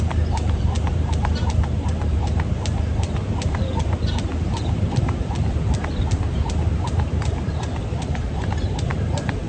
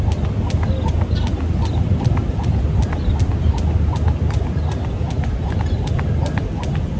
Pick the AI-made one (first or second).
first